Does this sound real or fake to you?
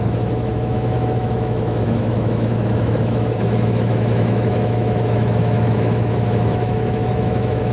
fake